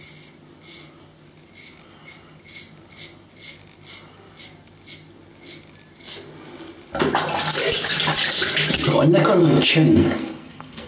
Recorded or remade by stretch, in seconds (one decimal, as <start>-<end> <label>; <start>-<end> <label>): 0.0-9.4 recorded; 9.4-10.9 remade